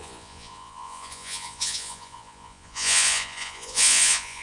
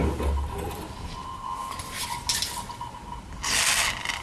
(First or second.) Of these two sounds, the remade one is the first